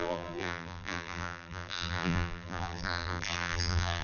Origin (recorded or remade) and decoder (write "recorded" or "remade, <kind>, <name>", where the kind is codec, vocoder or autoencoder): remade, vocoder, BigVGAN v2